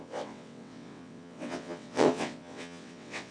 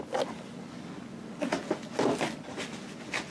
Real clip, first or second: second